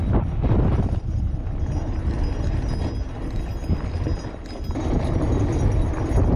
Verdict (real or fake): real